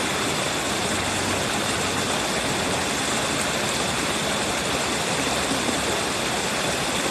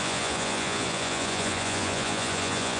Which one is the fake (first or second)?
second